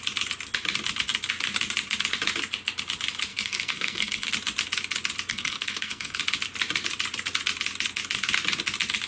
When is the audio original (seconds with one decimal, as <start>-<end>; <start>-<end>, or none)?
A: 0.0-3.3; 4.3-5.3; 6.2-9.1